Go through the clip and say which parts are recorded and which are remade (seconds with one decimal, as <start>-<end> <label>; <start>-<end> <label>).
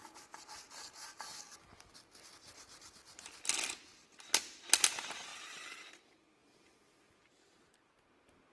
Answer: 0.0-8.5 recorded